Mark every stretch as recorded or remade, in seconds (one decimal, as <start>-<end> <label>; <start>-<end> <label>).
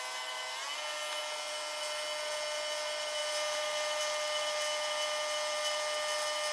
0.0-3.2 recorded; 3.2-4.0 remade; 4.0-6.5 recorded